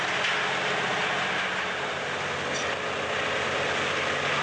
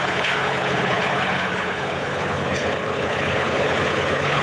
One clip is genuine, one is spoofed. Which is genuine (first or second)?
first